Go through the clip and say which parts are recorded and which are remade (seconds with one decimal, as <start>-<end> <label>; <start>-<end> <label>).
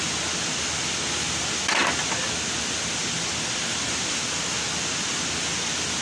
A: 0.0-6.0 recorded